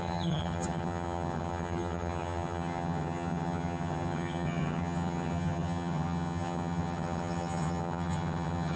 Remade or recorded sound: remade